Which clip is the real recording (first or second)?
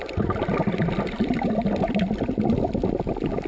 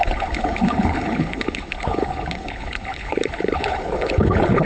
first